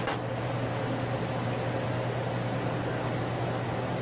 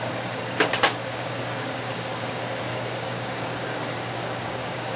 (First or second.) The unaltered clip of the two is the first